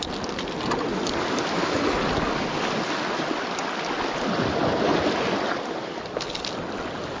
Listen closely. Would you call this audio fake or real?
real